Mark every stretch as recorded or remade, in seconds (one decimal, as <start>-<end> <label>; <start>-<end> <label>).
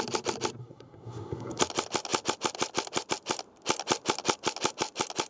0.0-0.6 recorded; 0.6-1.6 remade; 1.6-5.3 recorded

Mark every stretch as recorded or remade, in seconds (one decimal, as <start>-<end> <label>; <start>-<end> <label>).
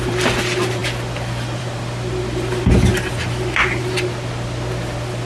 0.0-5.3 recorded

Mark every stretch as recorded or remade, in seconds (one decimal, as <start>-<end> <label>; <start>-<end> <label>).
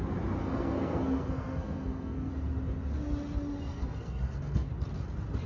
0.0-0.4 recorded; 0.4-2.3 remade; 2.3-3.7 recorded; 3.7-4.7 remade; 4.7-5.5 recorded